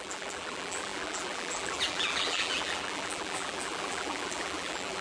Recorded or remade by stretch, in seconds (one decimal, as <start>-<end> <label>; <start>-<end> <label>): 0.0-5.0 remade